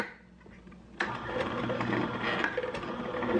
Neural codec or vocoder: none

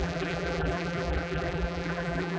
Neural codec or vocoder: vocoder, BigVGAN v2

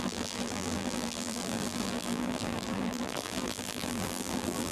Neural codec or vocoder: vocoder, BigVGAN v2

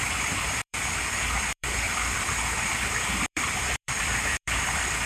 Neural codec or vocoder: vocoder, BigVGAN v2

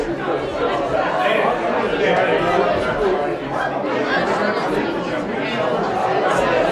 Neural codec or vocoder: none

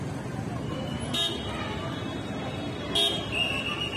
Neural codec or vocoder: none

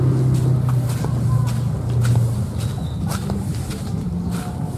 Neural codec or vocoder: none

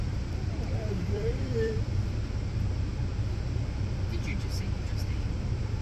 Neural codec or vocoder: vocoder, BigVGAN v2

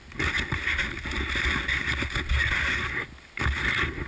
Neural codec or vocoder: none